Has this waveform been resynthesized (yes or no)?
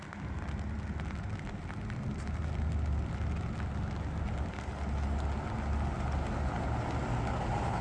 no